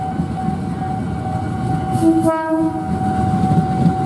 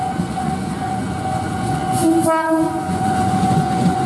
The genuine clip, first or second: first